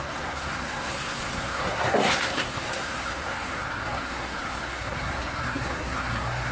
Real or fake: fake